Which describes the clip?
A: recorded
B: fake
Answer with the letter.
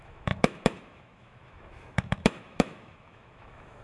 B